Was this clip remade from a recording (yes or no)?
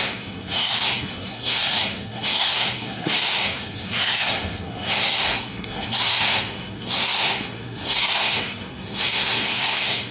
yes